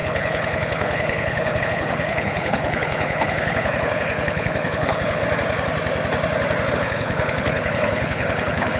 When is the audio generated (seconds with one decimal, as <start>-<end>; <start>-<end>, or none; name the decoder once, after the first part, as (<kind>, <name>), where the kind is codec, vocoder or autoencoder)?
0.0-5.2 (codec, HILCodec); 6.7-8.8